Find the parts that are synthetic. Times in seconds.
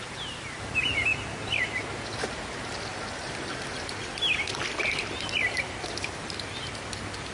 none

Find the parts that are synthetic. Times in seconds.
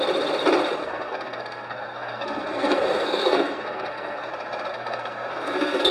0.8-4.3 (codec, SNAC); 4.7-5.9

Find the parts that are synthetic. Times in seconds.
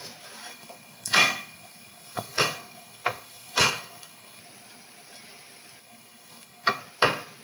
0.5-4.4 (codec, SNAC); 5.8-6.8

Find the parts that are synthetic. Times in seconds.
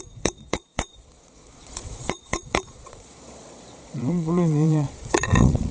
0.0-5.7 (vocoder, Vocos)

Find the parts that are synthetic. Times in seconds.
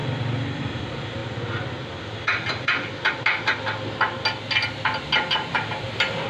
0.0-1.2 (vocoder, BigVGAN v2); 5.0-6.3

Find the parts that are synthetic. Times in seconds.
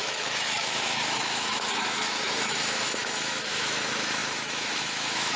0.0-5.4 (autoencoder, DAC-VAE)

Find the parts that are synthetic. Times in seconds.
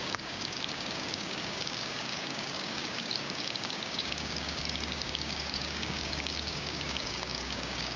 0.0-8.0 (codec, DAC)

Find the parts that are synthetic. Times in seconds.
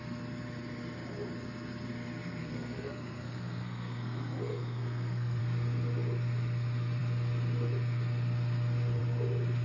2.4-5.4 (codec, SNAC)